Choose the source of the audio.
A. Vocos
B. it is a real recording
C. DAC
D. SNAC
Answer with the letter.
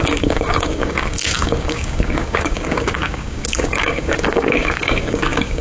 C